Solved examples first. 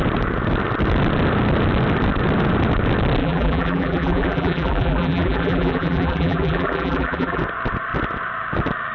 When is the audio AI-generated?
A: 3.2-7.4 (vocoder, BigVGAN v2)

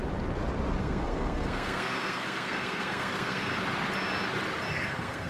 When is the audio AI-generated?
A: 0.8-3.5 (codec, SNAC); 4.7-5.3

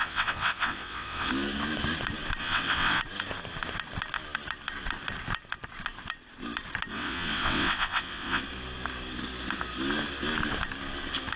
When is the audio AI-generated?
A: 0.0-1.3 (vocoder, WaveNeXt); 2.4-3.0; 6.9-8.4

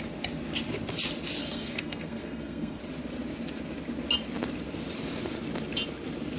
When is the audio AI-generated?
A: 1.4-2.8 (codec, SNAC)